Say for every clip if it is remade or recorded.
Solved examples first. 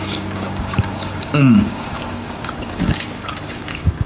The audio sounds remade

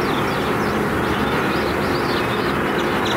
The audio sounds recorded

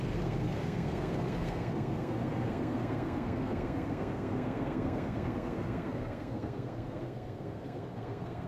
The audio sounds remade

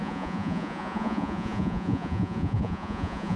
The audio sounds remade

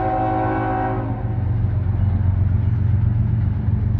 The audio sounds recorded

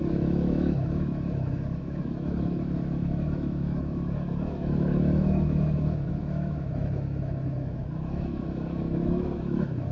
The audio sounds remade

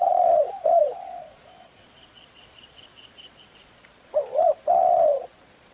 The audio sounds remade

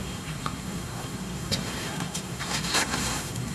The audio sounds remade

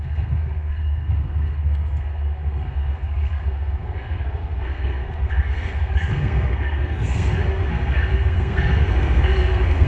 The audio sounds remade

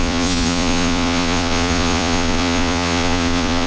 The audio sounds remade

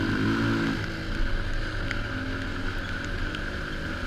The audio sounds recorded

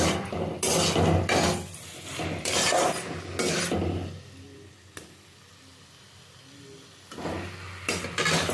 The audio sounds recorded